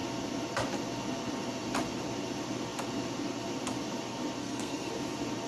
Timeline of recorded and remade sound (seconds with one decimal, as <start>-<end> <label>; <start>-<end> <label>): 0.0-4.4 recorded; 4.4-4.9 remade; 4.9-5.5 recorded